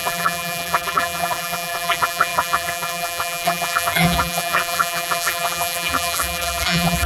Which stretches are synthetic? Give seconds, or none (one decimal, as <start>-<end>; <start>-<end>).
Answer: 0.0-7.1